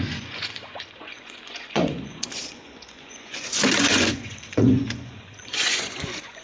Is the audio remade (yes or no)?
yes